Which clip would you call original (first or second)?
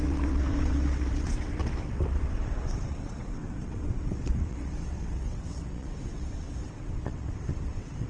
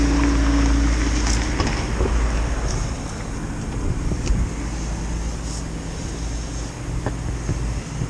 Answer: second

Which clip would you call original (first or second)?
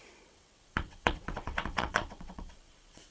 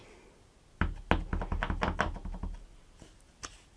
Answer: second